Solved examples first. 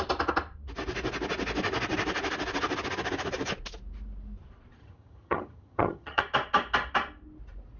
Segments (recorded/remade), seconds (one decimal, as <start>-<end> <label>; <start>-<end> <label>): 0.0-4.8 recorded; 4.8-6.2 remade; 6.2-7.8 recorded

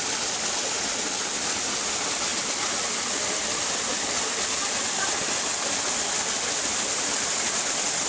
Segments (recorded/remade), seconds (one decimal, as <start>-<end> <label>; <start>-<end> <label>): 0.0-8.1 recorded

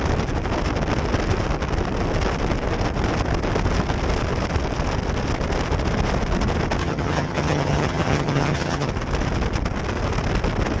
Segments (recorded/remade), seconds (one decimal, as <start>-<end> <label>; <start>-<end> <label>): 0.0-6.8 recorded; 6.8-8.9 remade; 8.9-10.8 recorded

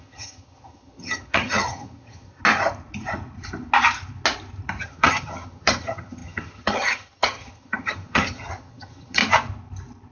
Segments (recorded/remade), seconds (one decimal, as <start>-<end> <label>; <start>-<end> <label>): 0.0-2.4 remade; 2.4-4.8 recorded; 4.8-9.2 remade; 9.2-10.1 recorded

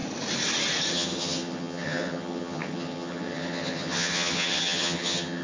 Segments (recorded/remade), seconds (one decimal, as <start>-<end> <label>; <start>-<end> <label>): 0.0-0.9 recorded; 0.9-5.4 remade